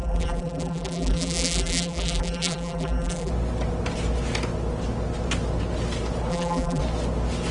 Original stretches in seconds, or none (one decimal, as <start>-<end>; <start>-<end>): 3.3-6.3; 6.8-7.5